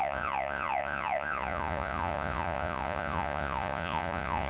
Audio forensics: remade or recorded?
remade